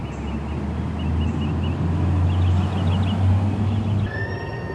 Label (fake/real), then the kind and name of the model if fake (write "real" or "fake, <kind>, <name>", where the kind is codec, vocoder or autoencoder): real